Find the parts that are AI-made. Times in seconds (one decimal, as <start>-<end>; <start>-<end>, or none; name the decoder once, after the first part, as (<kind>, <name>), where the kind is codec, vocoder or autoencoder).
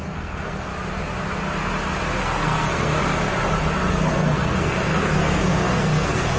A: 0.0-0.7 (codec, SNAC); 2.2-3.0; 3.9-6.4